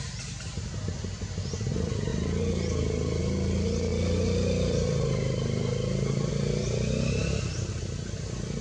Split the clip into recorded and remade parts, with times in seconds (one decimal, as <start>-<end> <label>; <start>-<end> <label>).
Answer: 0.0-8.6 recorded